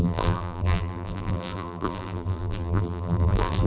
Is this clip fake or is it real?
fake